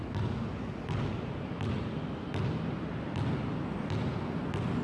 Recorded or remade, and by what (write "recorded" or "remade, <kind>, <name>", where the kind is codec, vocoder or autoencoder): recorded